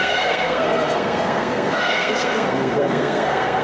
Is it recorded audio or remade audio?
remade